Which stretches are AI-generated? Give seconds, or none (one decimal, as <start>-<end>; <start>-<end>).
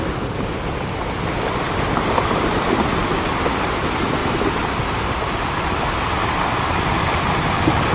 none